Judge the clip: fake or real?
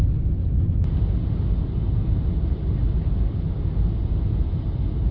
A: real